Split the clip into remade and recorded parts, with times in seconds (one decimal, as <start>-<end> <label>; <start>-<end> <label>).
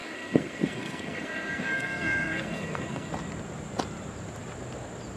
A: 0.0-3.1 remade; 3.1-5.2 recorded